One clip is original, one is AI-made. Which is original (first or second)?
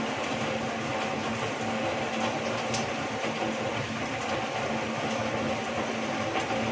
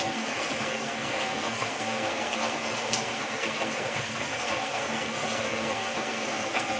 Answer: first